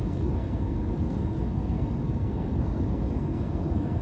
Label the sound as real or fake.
fake